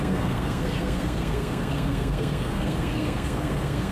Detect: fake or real fake